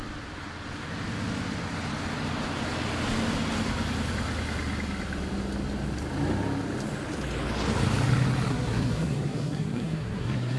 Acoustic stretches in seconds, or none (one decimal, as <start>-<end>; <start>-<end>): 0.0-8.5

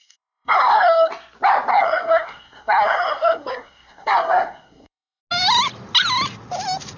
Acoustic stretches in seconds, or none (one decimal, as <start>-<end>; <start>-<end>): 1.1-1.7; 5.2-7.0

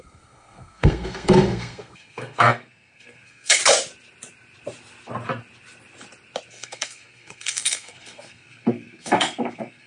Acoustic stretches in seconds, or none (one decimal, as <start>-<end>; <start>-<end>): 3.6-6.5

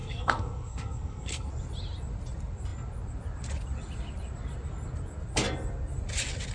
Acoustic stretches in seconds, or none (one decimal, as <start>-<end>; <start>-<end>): 1.5-6.5

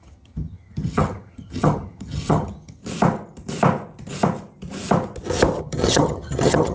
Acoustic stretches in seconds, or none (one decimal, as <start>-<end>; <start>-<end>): 2.8-5.6